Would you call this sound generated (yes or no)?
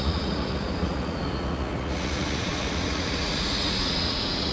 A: yes